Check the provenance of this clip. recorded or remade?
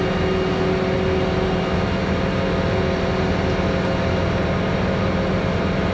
recorded